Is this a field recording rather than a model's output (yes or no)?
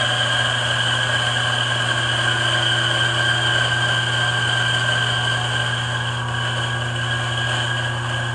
yes